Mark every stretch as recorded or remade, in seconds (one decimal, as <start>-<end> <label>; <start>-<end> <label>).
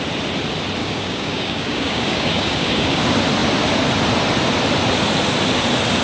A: 0.0-0.8 recorded; 0.8-3.0 remade; 3.0-6.0 recorded